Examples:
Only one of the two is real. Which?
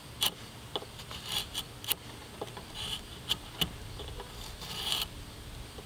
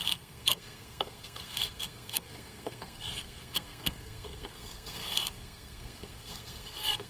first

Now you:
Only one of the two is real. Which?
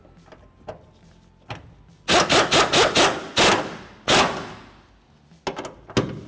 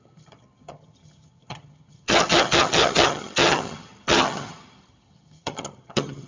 first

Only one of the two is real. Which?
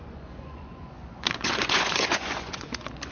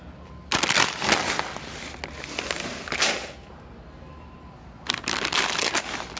second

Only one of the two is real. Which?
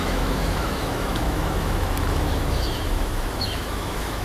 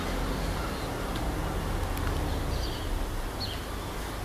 second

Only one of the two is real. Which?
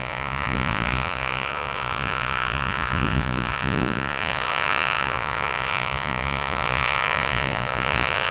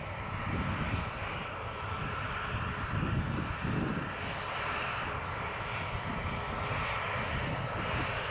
second